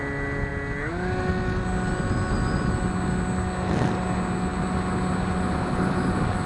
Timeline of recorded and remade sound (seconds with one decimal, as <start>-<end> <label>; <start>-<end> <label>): 0.0-6.5 recorded